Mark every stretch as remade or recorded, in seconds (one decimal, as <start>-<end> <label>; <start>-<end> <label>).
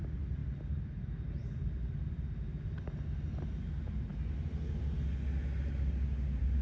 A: 0.0-6.6 recorded